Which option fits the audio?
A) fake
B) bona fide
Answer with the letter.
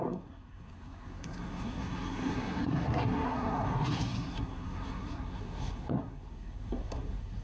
A